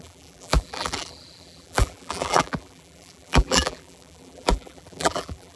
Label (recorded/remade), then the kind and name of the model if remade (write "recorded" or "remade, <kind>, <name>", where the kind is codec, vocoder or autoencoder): remade, vocoder, BigVGAN v2